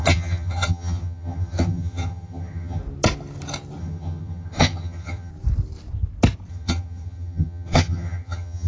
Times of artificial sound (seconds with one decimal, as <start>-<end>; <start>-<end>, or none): 0.0-2.8; 3.8-5.3; 6.5-8.7